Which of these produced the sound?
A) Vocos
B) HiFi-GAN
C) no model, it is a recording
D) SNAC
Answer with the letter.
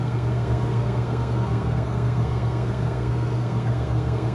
D